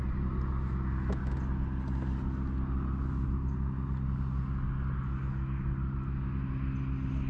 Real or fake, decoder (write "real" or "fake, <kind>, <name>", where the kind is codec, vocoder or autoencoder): real